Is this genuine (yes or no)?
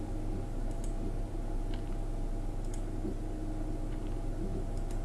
yes